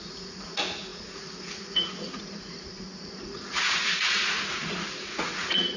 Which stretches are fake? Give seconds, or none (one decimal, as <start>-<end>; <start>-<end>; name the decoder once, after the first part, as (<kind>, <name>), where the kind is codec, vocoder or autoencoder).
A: 0.0-5.8 (vocoder, Vocos)